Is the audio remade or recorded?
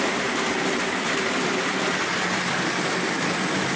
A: recorded